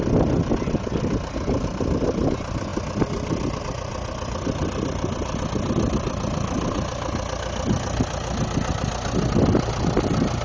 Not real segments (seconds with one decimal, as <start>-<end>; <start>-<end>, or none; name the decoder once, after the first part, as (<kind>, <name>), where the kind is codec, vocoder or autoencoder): none